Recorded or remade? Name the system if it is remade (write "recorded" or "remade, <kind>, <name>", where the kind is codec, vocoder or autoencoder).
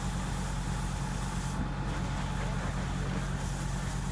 recorded